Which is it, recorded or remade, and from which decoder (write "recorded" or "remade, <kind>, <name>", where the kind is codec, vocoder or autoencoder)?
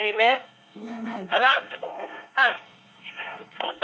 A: remade, codec, SNAC